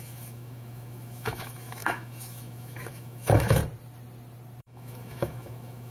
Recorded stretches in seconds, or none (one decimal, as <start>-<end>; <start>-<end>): 3.6-4.6